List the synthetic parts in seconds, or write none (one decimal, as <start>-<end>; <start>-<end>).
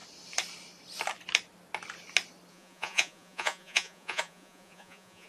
2.5-5.3